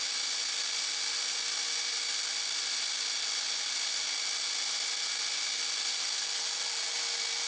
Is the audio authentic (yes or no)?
yes